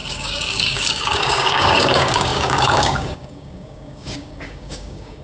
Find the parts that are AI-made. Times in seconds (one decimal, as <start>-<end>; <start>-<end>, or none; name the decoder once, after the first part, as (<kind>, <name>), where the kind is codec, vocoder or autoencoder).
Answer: 0.0-5.2 (codec, DAC)

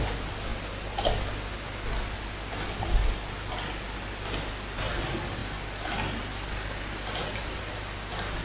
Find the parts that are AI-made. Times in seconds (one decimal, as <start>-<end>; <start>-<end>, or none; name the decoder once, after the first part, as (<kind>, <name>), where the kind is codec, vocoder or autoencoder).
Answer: none

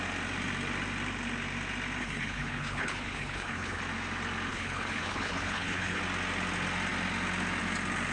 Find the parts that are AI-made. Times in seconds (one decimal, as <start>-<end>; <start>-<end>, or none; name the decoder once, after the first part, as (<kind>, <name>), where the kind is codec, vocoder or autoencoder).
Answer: 2.0-3.8 (codec, HILCodec); 4.5-6.0

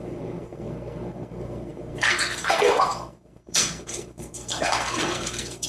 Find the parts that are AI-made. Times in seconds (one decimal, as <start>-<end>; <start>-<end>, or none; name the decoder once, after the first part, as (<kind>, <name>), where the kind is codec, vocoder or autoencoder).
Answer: 0.0-5.7 (codec, SNAC)